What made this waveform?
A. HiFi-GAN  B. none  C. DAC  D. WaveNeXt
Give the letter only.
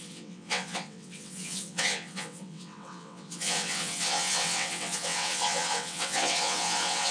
D